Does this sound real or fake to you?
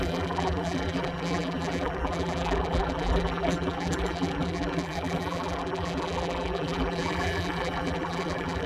fake